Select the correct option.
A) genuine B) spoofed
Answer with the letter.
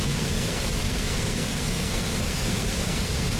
B